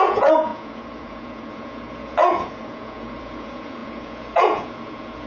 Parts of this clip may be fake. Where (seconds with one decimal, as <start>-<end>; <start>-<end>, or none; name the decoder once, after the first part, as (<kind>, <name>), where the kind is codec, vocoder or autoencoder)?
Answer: 0.0-5.3 (vocoder, Vocos)